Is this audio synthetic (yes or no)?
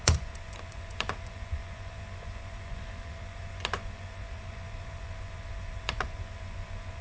yes